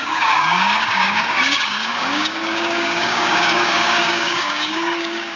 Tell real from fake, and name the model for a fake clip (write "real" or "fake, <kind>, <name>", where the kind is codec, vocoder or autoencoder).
fake, codec, DAC